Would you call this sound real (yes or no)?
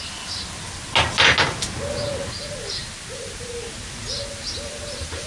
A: yes